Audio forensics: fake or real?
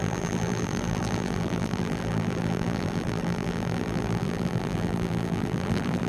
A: fake